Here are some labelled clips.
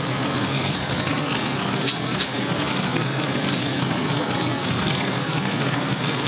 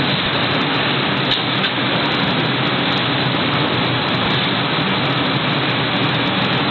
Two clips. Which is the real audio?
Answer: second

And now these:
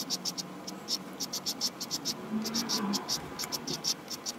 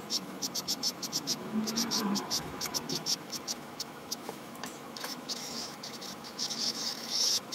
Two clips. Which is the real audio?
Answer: first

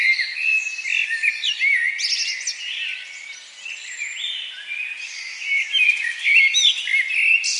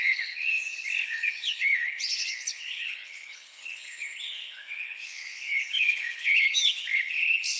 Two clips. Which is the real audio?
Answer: first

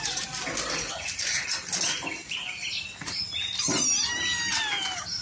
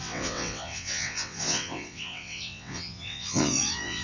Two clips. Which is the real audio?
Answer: first